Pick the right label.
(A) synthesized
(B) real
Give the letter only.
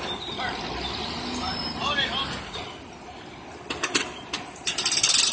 B